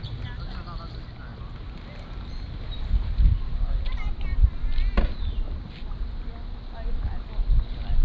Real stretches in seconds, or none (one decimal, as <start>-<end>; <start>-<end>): 0.0-8.0